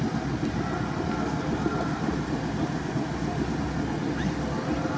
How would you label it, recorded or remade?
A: recorded